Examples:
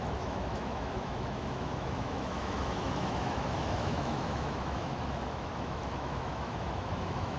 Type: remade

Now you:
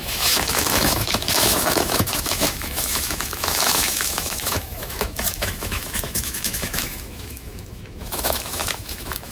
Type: remade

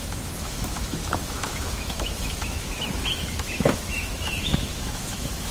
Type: remade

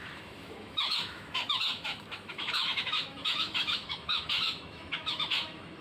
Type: remade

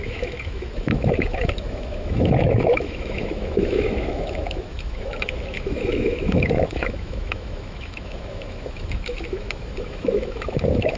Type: remade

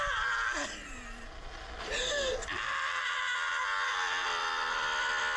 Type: recorded